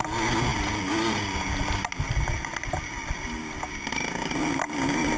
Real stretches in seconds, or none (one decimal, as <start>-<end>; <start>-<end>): 0.0-5.2